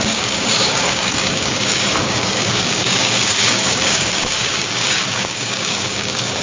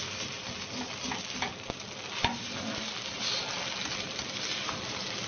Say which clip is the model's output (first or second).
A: first